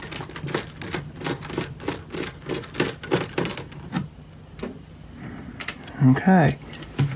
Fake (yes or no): no